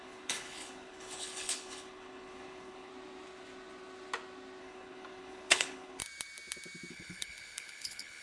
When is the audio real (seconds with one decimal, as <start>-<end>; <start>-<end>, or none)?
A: 2.9-4.6; 6.0-6.9